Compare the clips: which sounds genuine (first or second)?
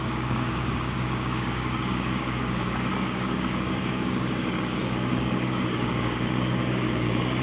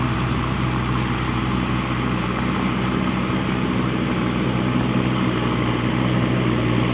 second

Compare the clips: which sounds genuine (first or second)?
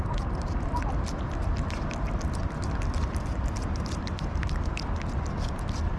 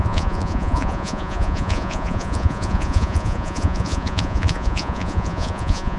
first